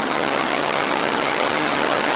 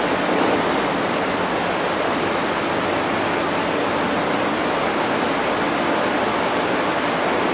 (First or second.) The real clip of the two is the second